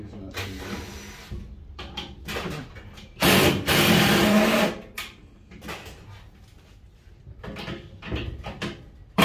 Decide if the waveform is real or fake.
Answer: real